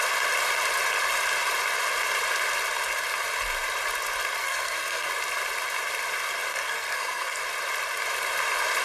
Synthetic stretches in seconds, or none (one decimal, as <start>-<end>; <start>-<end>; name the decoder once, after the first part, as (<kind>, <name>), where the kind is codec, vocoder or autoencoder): 4.4-5.1 (codec, SNAC); 6.5-7.4